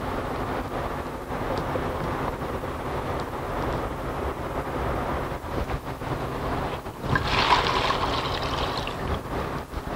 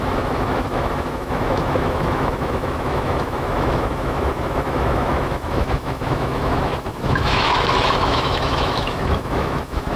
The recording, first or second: first